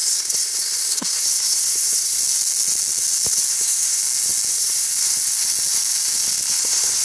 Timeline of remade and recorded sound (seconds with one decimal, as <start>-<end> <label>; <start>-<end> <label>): 0.0-2.2 remade; 2.2-3.5 recorded; 3.5-4.0 remade; 4.0-4.5 recorded; 4.5-4.9 remade; 4.9-6.6 recorded; 6.6-7.0 remade